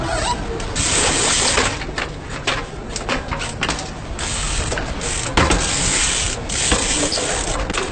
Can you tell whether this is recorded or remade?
recorded